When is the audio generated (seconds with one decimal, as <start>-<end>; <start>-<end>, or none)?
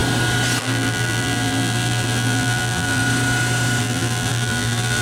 0.6-3.0; 3.8-5.0